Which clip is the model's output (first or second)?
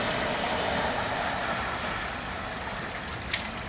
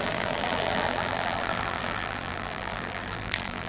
second